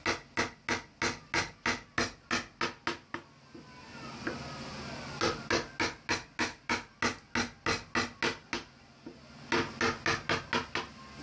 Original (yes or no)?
yes